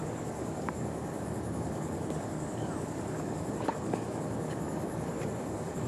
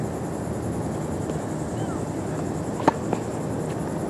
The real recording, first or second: second